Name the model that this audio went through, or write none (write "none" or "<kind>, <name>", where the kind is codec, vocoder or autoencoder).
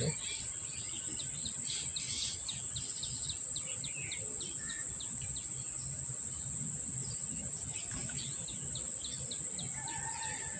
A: none